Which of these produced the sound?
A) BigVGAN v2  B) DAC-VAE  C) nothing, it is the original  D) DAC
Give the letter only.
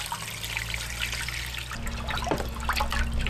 C